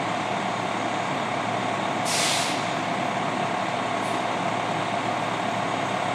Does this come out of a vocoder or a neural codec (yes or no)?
no